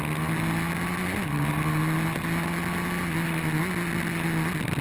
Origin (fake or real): real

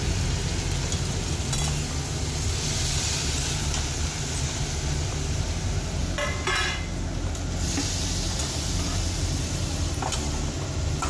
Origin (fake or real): real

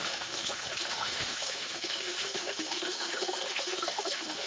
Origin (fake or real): fake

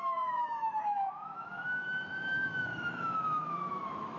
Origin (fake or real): fake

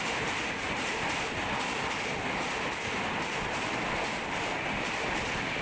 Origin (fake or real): real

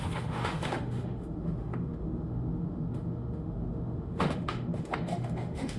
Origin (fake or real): fake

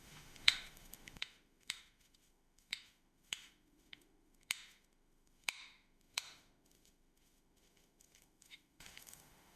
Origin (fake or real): fake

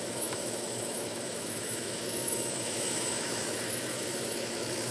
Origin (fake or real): fake